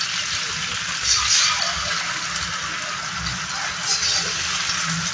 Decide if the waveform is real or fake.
real